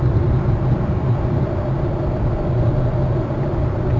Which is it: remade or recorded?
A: recorded